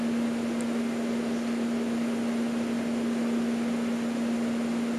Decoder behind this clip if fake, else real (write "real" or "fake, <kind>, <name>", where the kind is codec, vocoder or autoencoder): real